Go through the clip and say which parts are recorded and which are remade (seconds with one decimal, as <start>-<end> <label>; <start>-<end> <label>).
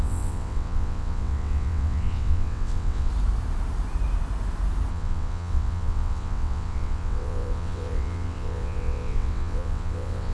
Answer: 0.0-3.1 remade; 3.1-4.9 recorded; 4.9-10.3 remade